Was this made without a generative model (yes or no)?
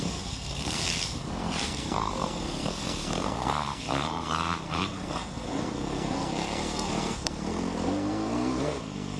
no